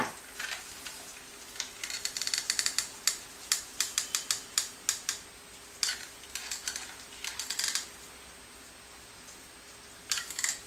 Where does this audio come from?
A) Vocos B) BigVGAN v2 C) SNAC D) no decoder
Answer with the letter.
D